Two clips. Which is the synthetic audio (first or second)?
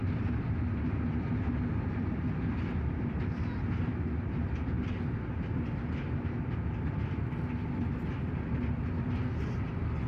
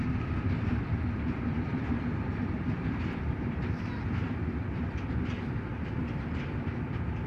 second